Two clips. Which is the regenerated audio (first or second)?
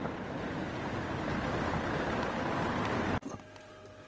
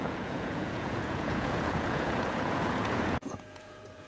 second